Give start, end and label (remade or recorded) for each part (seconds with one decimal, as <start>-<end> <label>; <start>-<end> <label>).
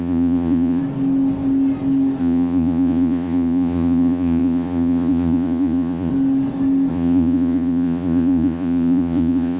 0.0-0.8 remade; 0.8-2.2 recorded; 2.2-6.1 remade; 6.1-6.9 recorded; 6.9-9.6 remade